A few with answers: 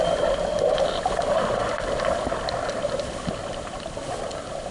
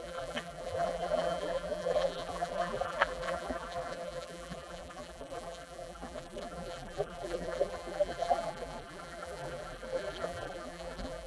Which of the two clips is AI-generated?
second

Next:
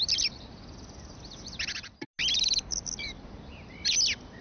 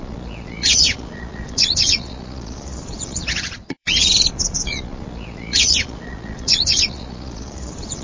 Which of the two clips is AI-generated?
second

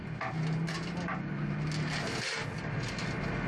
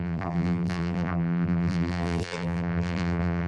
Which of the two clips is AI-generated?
second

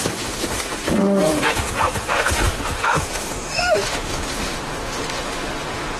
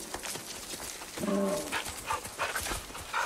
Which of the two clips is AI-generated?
first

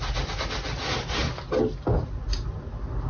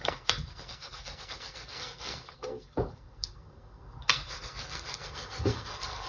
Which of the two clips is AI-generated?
second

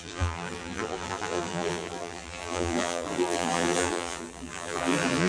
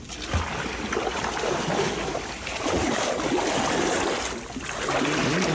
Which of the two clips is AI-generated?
first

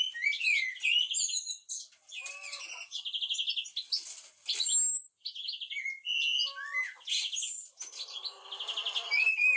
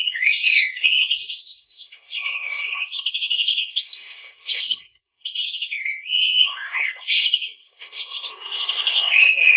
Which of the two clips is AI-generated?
second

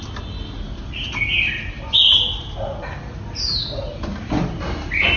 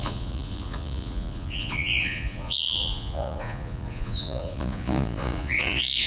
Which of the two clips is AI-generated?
second